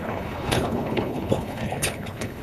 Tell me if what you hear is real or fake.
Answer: fake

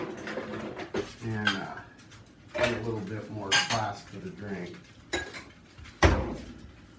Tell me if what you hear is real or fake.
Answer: real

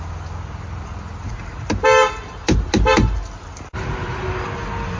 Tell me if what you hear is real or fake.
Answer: real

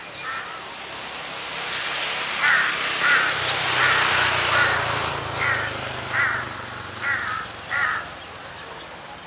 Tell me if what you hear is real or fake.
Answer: real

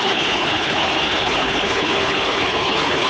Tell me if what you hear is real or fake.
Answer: fake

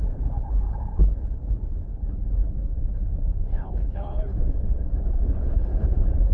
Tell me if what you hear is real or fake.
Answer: fake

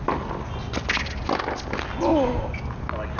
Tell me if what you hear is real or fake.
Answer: real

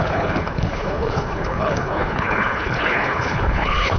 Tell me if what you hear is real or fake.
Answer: fake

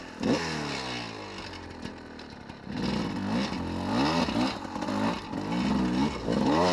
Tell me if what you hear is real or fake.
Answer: real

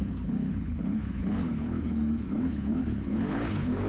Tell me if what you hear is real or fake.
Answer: fake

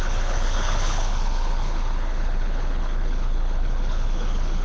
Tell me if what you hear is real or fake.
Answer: fake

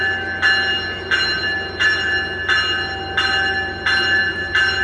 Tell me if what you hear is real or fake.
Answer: real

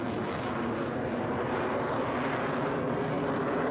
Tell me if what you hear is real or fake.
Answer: real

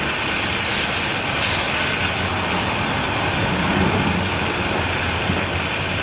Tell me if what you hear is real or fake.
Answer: real